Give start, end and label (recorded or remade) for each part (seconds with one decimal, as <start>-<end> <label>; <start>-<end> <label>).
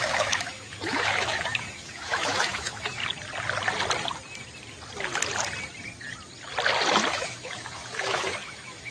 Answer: 0.0-3.0 remade; 3.0-7.1 recorded; 7.1-8.9 remade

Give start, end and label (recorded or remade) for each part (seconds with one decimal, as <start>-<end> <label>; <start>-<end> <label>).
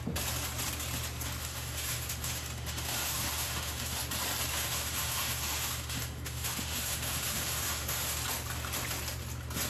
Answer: 0.0-1.4 recorded; 1.4-4.0 remade; 4.0-4.5 recorded; 4.5-8.2 remade; 8.2-9.7 recorded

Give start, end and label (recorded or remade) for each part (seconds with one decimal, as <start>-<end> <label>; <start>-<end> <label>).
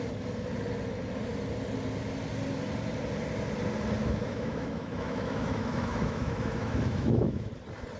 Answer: 0.0-4.0 recorded; 4.0-7.5 remade; 7.5-8.0 recorded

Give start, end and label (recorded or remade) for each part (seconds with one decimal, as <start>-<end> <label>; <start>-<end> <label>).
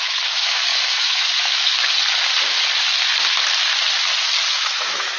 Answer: 0.0-1.9 remade; 1.9-4.5 recorded; 4.5-5.2 remade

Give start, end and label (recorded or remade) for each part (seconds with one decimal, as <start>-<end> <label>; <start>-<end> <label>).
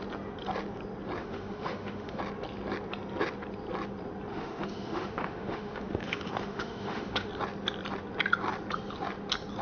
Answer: 0.0-1.2 recorded; 1.2-2.2 remade; 2.2-4.3 recorded; 4.3-7.3 remade; 7.3-9.6 recorded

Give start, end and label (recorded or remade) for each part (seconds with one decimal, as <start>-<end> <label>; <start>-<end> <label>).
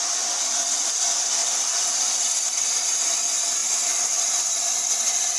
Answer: 0.0-5.4 recorded